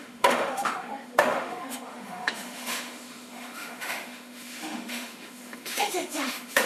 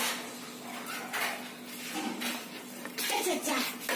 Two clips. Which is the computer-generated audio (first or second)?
first